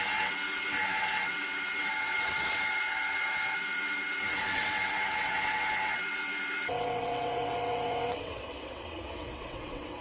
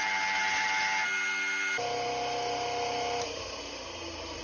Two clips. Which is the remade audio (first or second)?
first